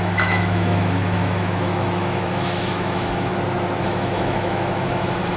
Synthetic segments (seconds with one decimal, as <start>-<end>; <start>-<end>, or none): 0.0-3.3; 3.8-5.4